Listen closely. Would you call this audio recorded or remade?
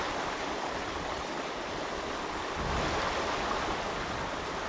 recorded